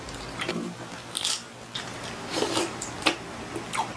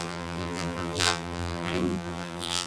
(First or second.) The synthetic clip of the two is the second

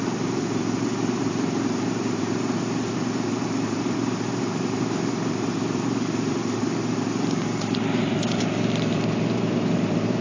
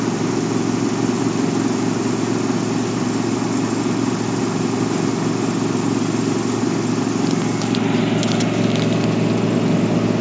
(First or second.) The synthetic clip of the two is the first